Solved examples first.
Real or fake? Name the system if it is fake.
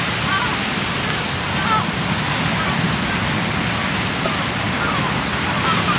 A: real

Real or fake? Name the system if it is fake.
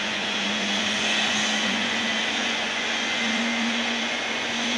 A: fake, vocoder, Vocos